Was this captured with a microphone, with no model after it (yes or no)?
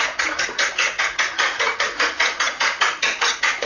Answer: no